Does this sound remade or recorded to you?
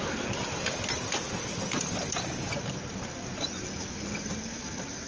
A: recorded